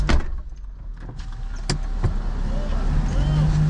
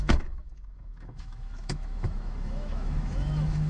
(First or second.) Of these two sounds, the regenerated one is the second